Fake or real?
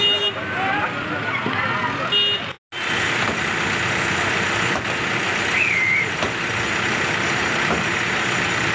real